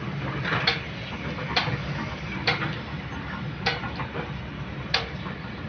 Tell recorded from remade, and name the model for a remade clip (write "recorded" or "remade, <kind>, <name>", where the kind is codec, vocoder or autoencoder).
recorded